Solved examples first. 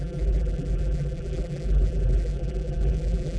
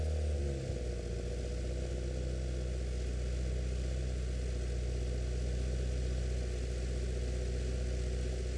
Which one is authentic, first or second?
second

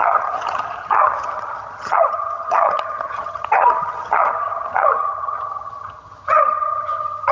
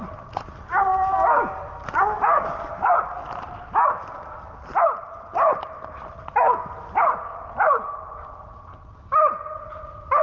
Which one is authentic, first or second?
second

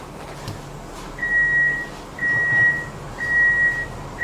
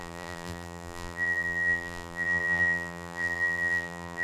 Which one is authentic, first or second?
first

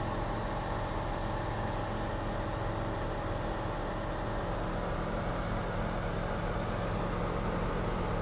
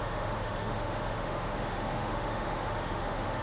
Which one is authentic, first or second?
first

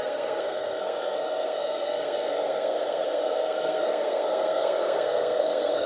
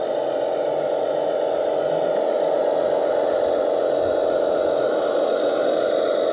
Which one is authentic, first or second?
second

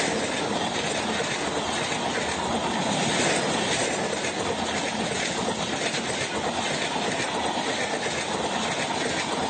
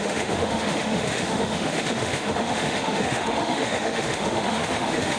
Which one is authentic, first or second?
first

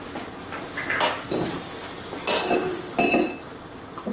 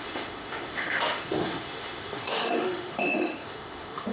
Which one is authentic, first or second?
first